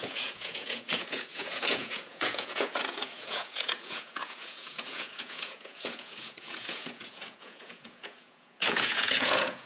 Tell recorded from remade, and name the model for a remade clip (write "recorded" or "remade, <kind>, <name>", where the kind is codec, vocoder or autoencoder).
remade, vocoder, Vocos